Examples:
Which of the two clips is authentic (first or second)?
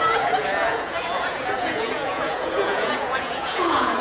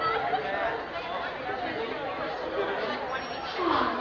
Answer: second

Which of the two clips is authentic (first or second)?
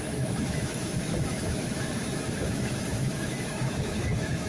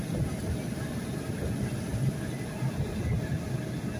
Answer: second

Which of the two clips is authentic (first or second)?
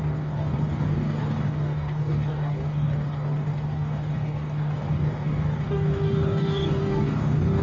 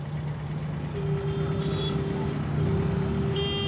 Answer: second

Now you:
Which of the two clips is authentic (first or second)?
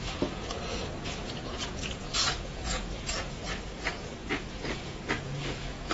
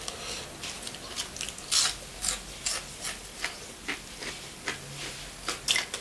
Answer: second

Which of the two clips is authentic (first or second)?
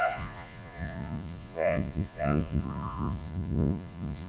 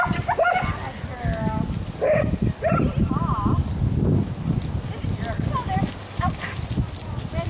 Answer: second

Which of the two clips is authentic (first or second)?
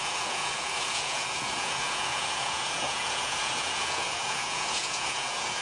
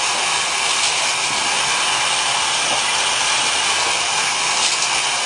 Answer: second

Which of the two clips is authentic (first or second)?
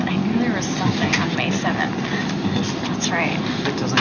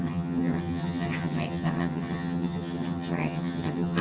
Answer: first